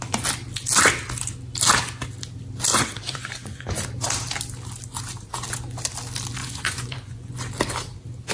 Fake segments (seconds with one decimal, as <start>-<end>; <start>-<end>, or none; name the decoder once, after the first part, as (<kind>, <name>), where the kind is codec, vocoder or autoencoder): 2.7-3.7 (vocoder, Vocos); 6.4-7.4

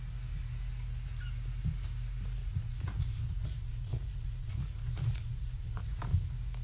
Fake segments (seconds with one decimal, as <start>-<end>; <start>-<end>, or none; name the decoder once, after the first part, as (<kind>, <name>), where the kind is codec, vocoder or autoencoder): 2.4-6.0 (vocoder, Vocos)